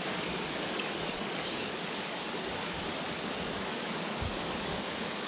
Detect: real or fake fake